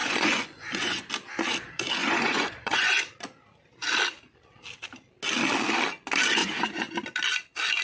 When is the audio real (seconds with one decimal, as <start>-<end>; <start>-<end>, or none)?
1.1-2.0; 3.0-6.4; 6.9-7.8